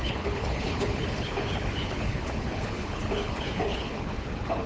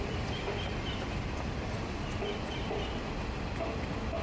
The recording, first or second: second